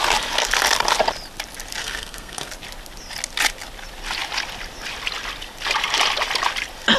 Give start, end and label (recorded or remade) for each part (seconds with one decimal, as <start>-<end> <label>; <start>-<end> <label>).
0.0-1.8 recorded; 1.8-2.5 remade; 2.5-7.0 recorded